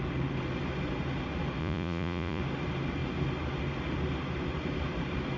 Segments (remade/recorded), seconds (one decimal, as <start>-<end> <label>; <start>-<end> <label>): 0.0-1.6 recorded; 1.6-2.4 remade; 2.4-5.4 recorded